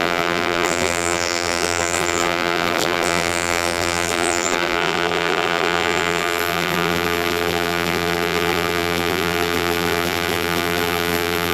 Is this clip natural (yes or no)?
no